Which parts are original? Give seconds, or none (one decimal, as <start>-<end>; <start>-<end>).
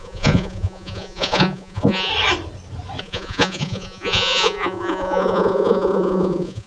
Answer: 2.1-3.0